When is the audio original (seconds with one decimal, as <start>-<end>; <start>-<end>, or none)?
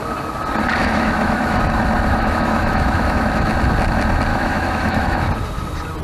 0.0-0.8; 1.6-2.1; 3.5-4.3; 5.3-6.0